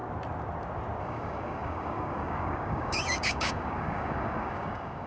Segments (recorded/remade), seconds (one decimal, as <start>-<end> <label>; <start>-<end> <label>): 0.0-1.0 recorded; 1.0-5.1 remade